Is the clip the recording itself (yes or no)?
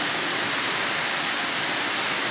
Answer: yes